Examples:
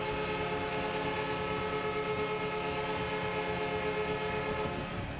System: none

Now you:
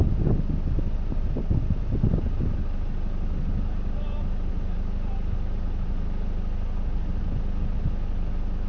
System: none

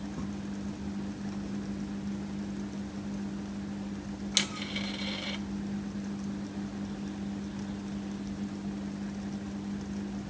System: none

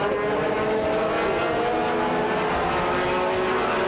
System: none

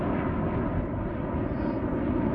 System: none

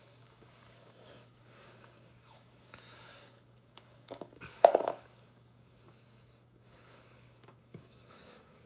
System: codec, DAC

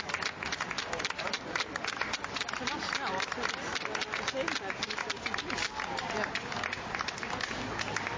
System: none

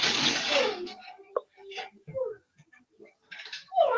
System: codec, DAC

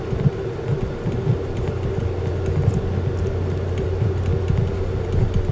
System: none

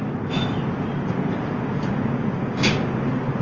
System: none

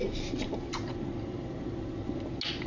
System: none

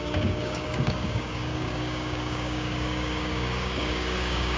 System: codec, DAC